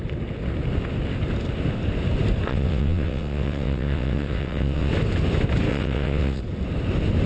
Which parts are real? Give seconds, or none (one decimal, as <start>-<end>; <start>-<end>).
0.0-2.5; 4.9-5.7; 6.4-7.3